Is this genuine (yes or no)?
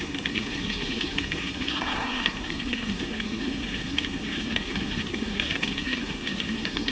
no